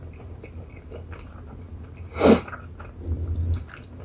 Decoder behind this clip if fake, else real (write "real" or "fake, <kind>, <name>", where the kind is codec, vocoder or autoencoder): real